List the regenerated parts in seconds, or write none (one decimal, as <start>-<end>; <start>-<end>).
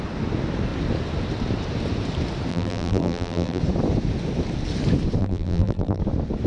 2.5-3.6; 5.2-6.0